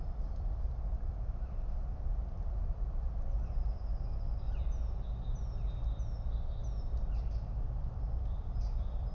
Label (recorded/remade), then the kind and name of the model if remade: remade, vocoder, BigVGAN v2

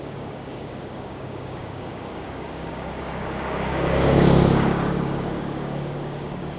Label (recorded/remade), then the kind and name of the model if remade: remade, codec, DAC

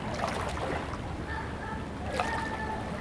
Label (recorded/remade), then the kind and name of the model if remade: recorded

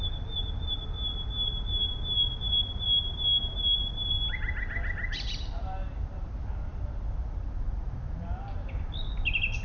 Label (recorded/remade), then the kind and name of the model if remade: recorded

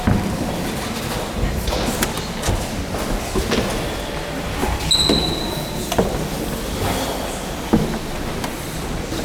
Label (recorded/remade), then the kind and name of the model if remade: recorded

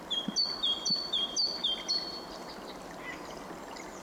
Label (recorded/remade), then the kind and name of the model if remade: recorded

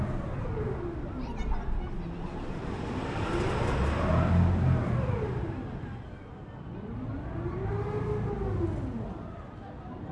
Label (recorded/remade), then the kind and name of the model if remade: recorded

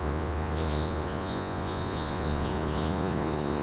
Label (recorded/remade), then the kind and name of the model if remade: remade, vocoder, Vocos